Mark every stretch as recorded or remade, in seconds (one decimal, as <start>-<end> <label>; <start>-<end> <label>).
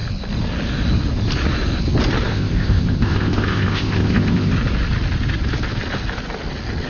0.0-2.3 recorded; 2.3-4.5 remade; 4.5-6.9 recorded